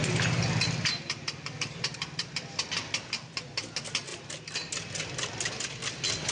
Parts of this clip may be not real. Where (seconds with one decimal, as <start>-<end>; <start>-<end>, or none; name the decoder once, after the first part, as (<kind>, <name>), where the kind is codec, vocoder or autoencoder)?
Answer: none